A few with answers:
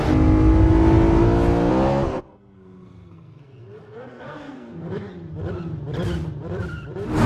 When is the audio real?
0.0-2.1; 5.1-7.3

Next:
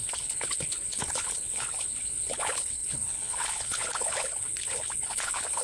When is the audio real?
none

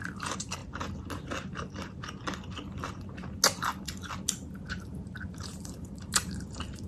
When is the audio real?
0.6-4.7

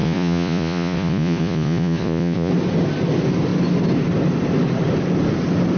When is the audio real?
2.5-5.8